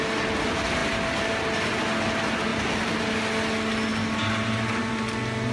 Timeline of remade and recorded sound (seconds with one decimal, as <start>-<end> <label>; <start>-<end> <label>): 0.0-2.5 recorded; 2.5-3.0 remade; 3.0-5.5 recorded